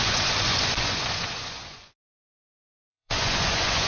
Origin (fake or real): fake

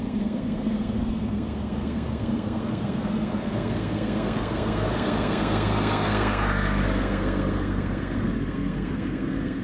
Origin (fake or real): fake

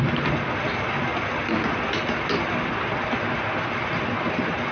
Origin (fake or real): real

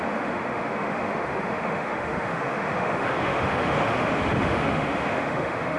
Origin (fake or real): fake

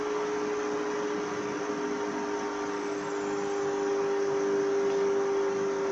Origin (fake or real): real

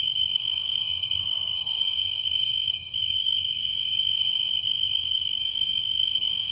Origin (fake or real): fake